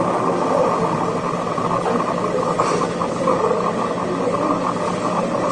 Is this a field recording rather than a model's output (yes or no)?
yes